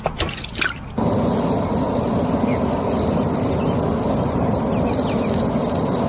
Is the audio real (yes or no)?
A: yes